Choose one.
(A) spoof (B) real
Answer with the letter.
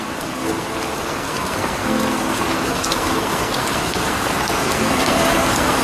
A